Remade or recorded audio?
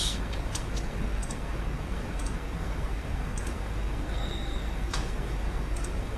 remade